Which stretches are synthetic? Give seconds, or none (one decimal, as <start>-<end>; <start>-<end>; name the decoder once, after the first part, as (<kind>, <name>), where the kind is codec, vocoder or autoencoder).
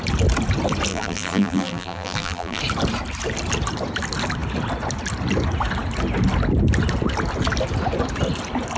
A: 0.9-2.6 (vocoder, BigVGAN v2)